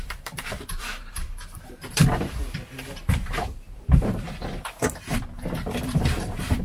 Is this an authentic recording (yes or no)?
no